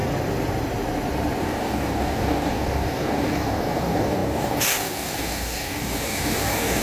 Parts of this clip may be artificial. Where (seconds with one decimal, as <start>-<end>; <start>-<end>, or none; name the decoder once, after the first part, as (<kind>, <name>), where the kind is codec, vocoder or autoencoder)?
1.4-6.8 (codec, DAC)